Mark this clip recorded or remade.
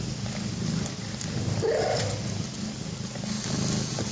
recorded